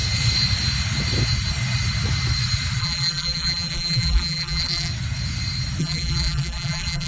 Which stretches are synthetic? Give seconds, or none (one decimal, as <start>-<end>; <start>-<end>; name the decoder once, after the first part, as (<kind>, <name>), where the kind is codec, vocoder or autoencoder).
2.8-4.9 (vocoder, BigVGAN v2); 5.8-7.1